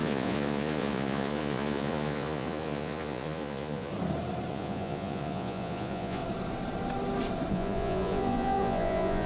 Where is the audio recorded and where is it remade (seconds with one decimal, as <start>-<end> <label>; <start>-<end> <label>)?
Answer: 0.0-3.9 remade; 3.9-4.5 recorded; 4.5-6.2 remade; 6.2-7.5 recorded; 7.5-9.3 remade